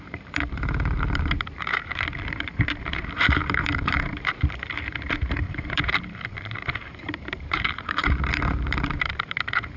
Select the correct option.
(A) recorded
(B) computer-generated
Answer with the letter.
B